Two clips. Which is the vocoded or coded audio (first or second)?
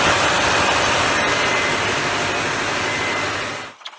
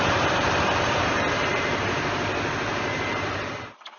second